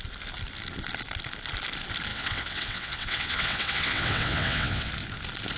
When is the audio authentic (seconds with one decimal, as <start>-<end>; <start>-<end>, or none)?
0.0-2.1; 4.9-5.6